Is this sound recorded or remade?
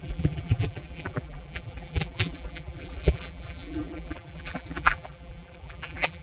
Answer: remade